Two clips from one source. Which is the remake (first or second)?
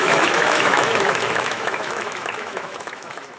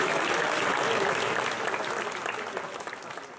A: first